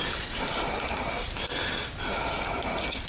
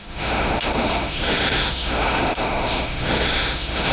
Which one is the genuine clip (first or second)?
first